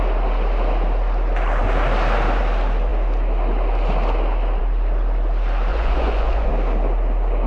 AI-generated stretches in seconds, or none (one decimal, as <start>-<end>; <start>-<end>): 5.7-6.5